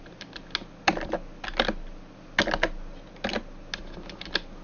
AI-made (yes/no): no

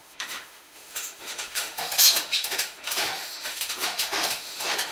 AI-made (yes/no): yes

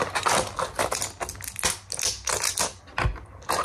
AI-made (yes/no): no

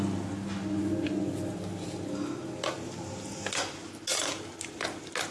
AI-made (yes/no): no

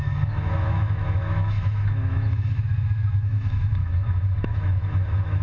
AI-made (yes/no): yes